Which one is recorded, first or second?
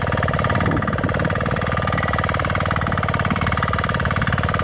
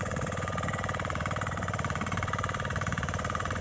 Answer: first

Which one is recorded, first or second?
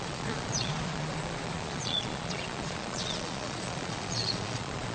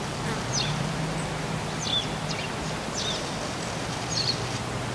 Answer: second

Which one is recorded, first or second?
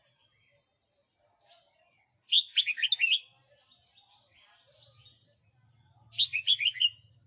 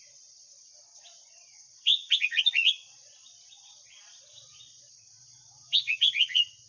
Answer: first